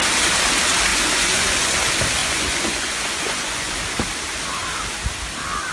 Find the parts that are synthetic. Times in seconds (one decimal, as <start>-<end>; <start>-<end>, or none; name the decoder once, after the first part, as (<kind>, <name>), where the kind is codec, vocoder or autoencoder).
0.9-1.8 (vocoder, Vocos); 2.2-3.8